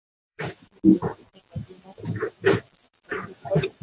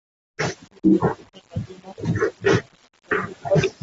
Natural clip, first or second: second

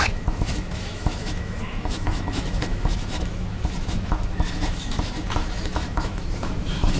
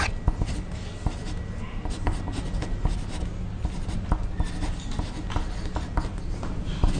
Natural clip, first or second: second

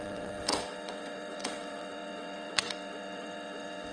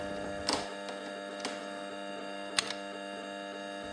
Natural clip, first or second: second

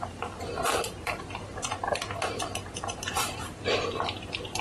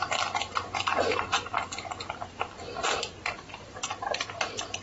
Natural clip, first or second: second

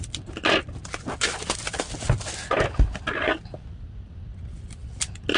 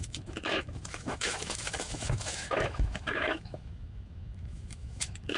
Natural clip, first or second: first